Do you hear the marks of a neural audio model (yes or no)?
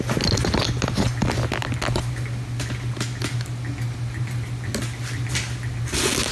no